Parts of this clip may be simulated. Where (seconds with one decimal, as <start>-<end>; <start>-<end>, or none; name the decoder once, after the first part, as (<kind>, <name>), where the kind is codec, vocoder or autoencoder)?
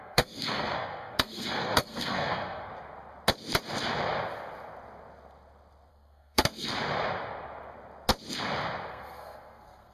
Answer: 0.0-2.7 (codec, SNAC); 5.9-6.7; 8.9-9.9